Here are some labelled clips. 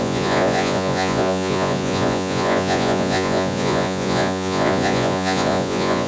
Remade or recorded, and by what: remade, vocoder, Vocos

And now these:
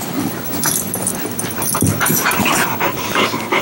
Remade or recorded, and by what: recorded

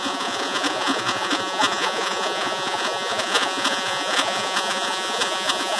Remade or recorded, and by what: remade, vocoder, Vocos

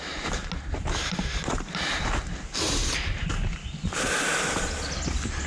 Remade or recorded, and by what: recorded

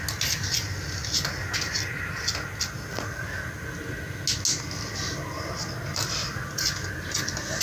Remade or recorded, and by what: recorded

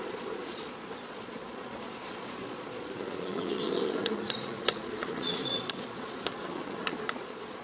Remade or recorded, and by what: remade, vocoder, Vocos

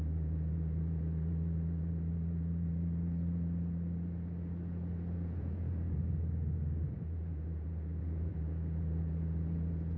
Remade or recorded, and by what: remade, vocoder, Vocos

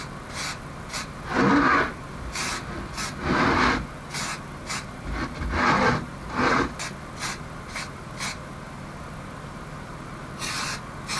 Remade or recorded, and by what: recorded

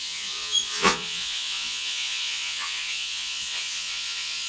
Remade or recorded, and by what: remade, vocoder, Vocos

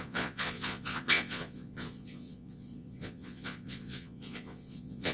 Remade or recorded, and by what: remade, vocoder, Vocos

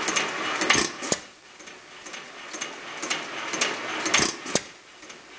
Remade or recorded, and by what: recorded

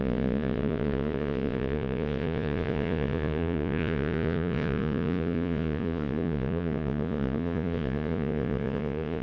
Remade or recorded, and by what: remade, vocoder, Vocos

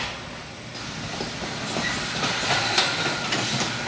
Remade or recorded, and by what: recorded